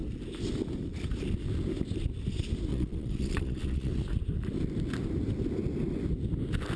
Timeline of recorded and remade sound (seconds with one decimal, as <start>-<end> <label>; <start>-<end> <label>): 0.0-2.7 recorded; 2.7-3.9 remade; 3.9-6.8 recorded